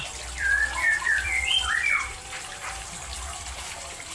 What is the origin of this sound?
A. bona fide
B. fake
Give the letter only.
B